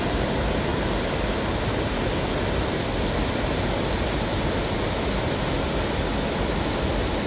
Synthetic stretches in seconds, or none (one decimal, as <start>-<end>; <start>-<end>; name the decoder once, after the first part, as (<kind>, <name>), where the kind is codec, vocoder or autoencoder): none